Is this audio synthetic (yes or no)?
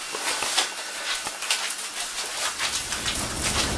no